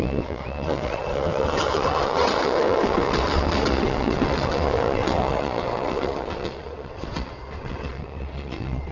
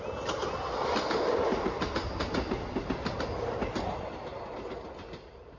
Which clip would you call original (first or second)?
second